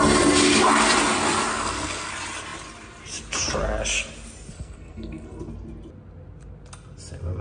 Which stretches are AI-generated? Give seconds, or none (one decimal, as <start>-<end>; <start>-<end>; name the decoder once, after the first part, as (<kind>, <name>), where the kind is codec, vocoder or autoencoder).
1.5-2.1 (codec, SNAC); 4.5-5.5